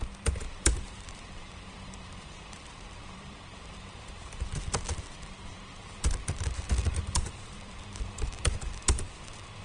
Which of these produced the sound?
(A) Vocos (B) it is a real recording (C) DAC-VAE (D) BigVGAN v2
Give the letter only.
D